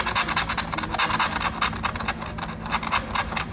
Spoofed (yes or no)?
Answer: no